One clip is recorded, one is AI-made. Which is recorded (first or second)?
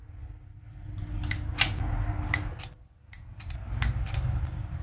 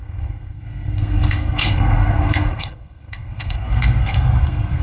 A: first